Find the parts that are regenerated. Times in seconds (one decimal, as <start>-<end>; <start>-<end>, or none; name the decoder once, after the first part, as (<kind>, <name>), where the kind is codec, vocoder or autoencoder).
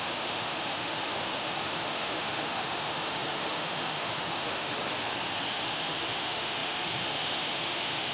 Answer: 0.0-4.7 (autoencoder, DAC-VAE); 5.5-8.1